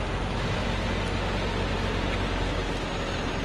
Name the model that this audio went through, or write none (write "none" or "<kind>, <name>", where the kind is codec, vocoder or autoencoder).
none